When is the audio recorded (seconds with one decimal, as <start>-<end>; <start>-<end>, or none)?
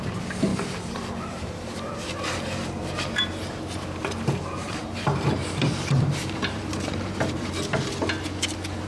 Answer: 0.0-0.5; 3.3-4.6; 7.5-8.9